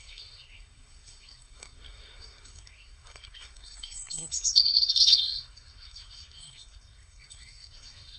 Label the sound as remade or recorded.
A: remade